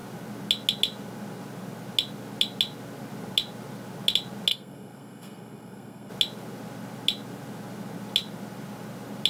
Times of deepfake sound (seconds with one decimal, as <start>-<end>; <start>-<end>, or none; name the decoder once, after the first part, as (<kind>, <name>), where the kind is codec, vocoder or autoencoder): 4.5-6.1 (codec, SNAC)